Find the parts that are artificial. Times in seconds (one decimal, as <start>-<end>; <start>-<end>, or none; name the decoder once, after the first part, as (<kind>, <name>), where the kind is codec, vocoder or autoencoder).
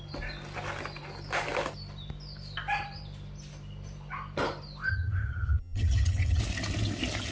4.9-6.4 (vocoder, HiFi-GAN)